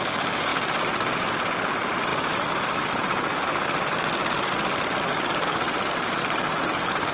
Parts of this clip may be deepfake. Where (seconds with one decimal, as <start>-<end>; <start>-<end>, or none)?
none

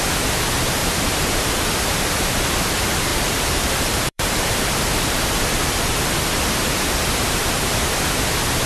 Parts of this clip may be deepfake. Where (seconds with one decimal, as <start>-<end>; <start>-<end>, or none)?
0.8-1.7; 3.1-6.1

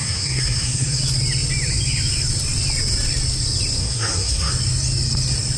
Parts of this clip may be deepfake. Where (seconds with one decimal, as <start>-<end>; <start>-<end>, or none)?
0.0-1.0; 3.8-4.5